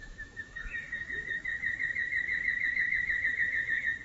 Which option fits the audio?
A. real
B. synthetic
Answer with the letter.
B